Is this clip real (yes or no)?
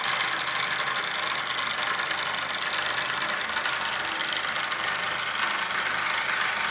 yes